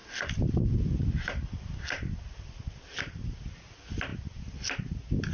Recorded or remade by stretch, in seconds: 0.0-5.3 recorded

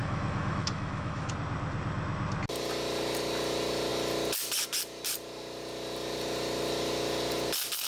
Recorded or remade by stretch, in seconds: 0.0-1.3 remade; 1.3-7.9 recorded

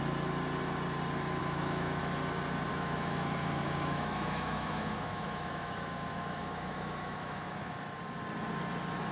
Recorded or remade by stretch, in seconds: 0.0-1.4 recorded; 1.4-2.0 remade; 2.0-2.7 recorded; 2.7-8.0 remade; 8.0-9.1 recorded

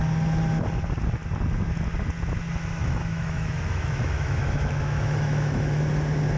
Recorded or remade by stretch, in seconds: 0.0-2.8 recorded; 2.8-5.8 remade; 5.8-6.4 recorded

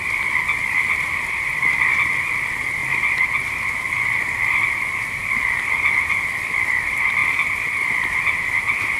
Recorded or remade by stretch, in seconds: 0.0-9.0 recorded